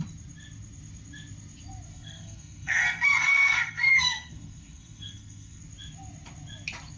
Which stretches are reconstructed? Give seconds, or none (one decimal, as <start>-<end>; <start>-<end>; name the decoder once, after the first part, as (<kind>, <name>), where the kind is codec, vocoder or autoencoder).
1.9-5.6 (codec, SNAC)